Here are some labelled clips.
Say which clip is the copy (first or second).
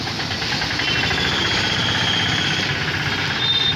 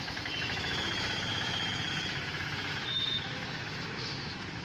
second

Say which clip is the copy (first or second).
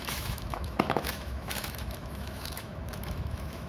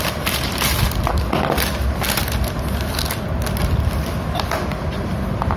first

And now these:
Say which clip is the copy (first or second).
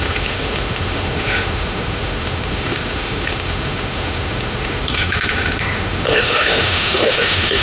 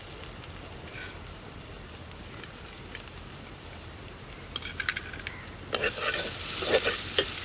first